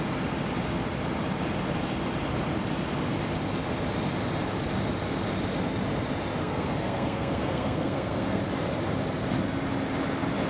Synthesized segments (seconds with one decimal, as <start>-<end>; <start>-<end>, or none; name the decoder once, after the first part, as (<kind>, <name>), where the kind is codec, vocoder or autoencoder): 6.4-8.4 (codec, SNAC)